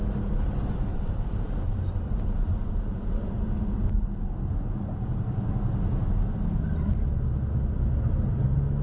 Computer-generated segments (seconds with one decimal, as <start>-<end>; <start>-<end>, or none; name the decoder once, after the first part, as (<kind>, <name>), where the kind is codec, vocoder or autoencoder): 0.9-3.0 (vocoder, BigVGAN v2)